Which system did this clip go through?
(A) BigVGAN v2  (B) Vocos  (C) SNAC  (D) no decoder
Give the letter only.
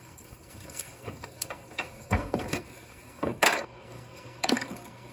C